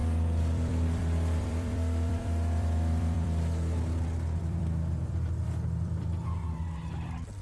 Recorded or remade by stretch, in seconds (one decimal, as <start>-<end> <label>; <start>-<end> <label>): 0.0-7.4 remade